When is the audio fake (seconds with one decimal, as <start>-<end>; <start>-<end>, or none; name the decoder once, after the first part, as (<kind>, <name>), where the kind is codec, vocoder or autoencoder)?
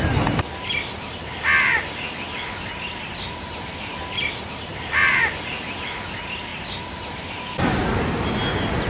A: 3.1-4.0 (vocoder, BigVGAN v2); 4.7-5.8; 6.5-7.3